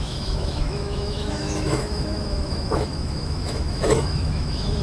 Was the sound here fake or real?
fake